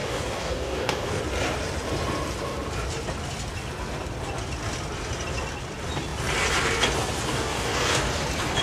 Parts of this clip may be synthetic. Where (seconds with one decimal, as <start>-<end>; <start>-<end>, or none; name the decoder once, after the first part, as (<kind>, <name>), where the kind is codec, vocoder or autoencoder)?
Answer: 0.0-1.2 (codec, DAC); 7.3-8.0